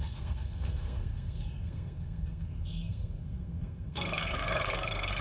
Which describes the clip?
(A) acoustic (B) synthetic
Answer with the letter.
B